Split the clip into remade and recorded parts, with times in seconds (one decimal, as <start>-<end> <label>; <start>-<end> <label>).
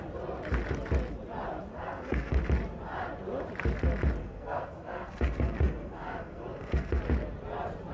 0.0-1.7 recorded; 1.7-2.4 remade; 2.4-4.2 recorded; 4.2-7.0 remade; 7.0-7.9 recorded